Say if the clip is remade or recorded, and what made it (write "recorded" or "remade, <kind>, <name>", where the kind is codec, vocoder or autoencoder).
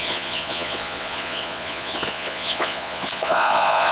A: remade, vocoder, Vocos